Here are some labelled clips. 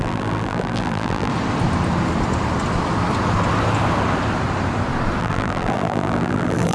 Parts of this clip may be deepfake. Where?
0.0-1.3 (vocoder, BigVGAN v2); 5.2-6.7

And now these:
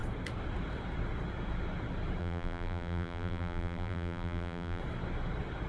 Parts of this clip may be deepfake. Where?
2.2-4.8 (vocoder, BigVGAN v2)

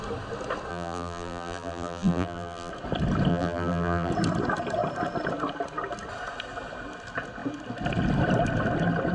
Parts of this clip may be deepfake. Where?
0.7-2.7 (vocoder, BigVGAN v2); 3.3-4.1

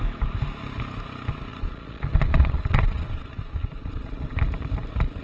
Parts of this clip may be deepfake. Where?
1.5-4.4 (vocoder, Vocos)

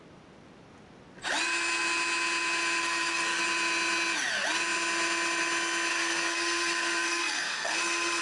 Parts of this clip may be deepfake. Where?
2.8-3.4 (codec, SNAC); 5.9-8.2

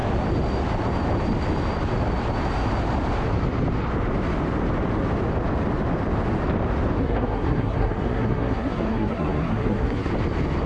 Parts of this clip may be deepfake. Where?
7.0-10.1 (codec, SNAC)

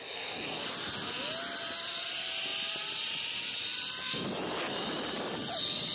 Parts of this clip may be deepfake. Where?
none